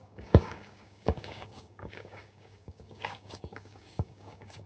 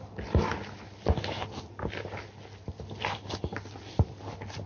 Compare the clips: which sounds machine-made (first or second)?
first